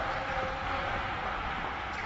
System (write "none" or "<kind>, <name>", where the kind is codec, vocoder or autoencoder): none